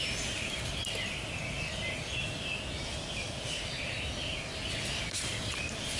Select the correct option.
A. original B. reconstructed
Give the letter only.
A